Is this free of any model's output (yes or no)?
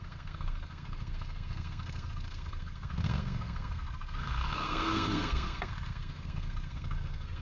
no